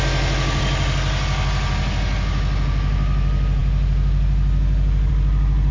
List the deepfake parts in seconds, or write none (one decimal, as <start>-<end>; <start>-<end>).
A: none